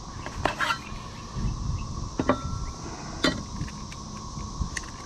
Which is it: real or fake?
real